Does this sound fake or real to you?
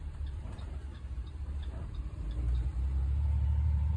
fake